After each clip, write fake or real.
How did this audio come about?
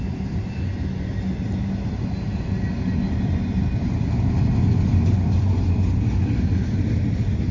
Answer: real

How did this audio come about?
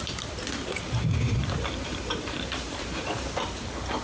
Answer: fake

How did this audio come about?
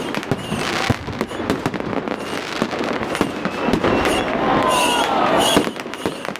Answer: real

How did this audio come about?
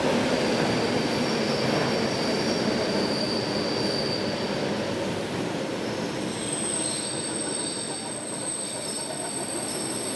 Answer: real